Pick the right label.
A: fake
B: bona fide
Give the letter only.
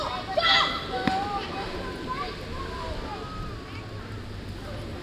B